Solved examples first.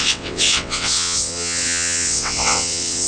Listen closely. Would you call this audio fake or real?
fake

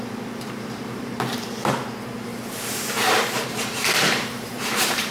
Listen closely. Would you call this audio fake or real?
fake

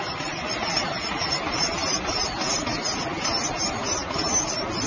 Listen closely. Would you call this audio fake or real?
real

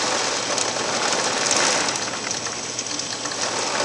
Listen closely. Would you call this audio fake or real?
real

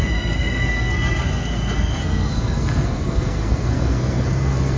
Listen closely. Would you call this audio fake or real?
fake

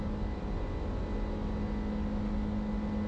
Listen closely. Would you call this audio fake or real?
real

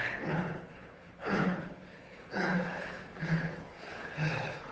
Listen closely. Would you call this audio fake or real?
fake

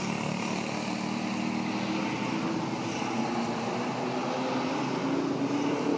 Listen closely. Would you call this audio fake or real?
real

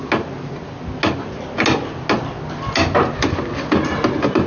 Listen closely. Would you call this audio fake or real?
real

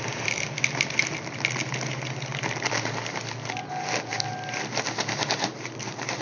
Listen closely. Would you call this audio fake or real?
real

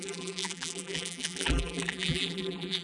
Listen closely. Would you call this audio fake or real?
fake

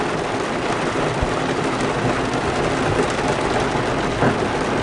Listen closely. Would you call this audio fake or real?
real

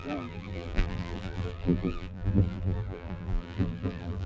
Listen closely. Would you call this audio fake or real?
fake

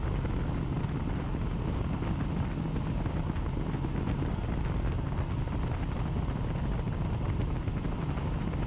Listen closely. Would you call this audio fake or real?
real